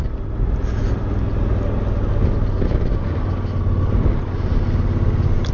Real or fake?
real